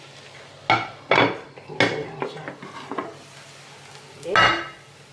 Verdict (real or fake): real